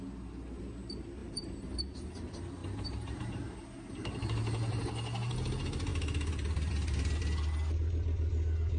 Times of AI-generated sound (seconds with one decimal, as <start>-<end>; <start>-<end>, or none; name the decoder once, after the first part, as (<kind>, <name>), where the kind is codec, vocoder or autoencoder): 2.6-4.2 (vocoder, BigVGAN v2)